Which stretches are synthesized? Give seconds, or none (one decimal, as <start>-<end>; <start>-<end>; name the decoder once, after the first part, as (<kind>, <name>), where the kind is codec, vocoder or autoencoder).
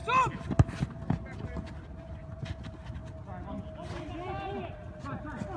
none